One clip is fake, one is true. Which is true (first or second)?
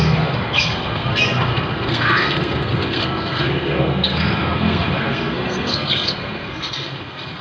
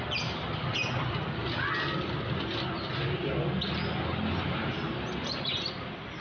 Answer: second